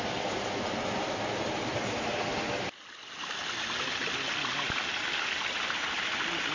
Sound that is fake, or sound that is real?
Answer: real